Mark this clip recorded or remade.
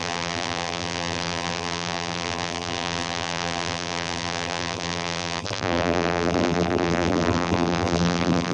remade